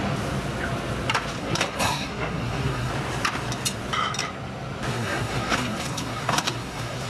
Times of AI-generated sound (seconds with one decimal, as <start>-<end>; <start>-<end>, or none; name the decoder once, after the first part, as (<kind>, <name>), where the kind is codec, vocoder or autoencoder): 1.4-2.9 (codec, SNAC); 4.9-7.1